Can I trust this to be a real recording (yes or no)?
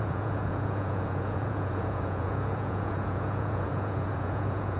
no